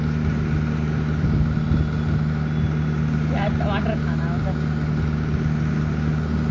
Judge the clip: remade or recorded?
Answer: recorded